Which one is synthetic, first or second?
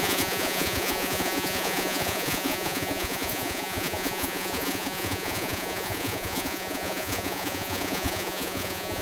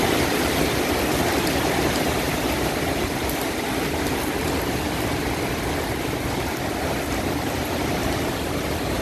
first